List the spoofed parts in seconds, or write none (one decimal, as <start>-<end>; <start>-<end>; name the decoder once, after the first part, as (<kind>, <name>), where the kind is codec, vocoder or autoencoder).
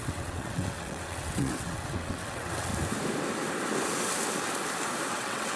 0.0-2.7 (vocoder, WaveNeXt); 5.1-5.6